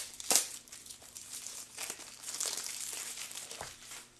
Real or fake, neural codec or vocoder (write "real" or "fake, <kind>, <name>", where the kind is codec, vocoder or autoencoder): fake, vocoder, BigVGAN v2